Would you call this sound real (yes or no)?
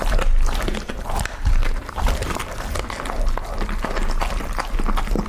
yes